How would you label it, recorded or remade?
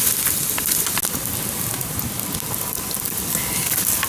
recorded